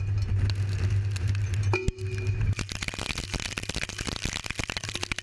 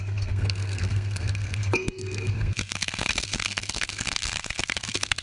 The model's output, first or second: second